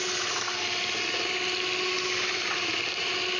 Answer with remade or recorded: recorded